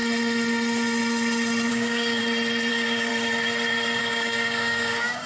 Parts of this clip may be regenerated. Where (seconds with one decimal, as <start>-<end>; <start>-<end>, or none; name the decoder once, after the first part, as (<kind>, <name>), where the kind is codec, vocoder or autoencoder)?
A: 1.7-2.2 (codec, DAC); 2.7-3.1; 4.0-5.3

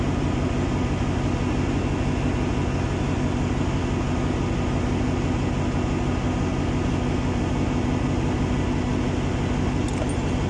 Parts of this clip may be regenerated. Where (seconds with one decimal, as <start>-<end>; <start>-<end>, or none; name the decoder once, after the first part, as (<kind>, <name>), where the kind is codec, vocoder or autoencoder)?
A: none

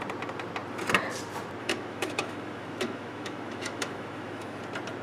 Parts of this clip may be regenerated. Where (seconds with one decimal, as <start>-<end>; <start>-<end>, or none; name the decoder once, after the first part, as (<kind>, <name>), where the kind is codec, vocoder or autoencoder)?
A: 1.6-4.6 (autoencoder, DAC-VAE)